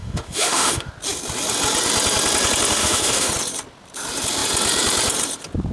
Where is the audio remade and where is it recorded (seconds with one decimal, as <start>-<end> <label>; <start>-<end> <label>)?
0.0-0.9 remade; 0.9-2.8 recorded; 2.8-3.3 remade; 3.3-5.7 recorded

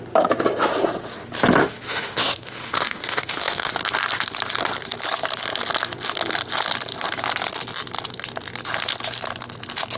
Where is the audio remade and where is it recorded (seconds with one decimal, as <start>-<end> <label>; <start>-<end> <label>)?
0.0-1.6 recorded; 1.6-3.7 remade; 3.7-10.0 recorded

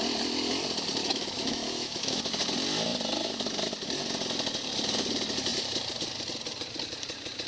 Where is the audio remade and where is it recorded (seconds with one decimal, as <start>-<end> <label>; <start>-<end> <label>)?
0.0-1.0 recorded; 1.0-2.2 remade; 2.2-7.5 recorded

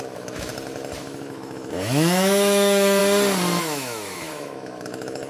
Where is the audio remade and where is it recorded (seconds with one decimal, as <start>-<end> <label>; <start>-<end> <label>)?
0.0-0.5 remade; 0.5-1.0 recorded; 1.0-3.0 remade; 3.0-3.6 recorded; 3.6-5.3 remade

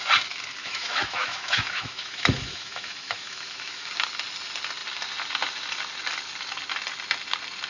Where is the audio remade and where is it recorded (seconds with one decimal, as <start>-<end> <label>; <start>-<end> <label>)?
0.0-0.6 recorded; 0.6-3.9 remade; 3.9-7.7 recorded

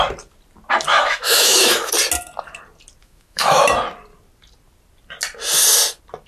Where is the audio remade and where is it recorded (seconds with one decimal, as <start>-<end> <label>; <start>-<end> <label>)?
0.0-0.9 recorded; 0.9-1.9 remade; 1.9-3.0 recorded; 3.0-3.6 remade; 3.6-6.3 recorded

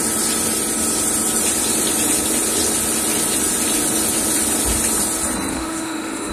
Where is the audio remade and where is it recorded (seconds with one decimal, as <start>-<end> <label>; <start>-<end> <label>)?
0.0-5.5 recorded; 5.5-6.3 remade